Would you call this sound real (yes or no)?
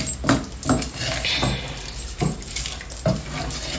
yes